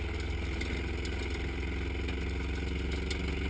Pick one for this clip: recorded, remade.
recorded